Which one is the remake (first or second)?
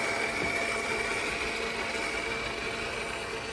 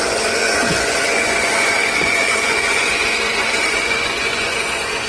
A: second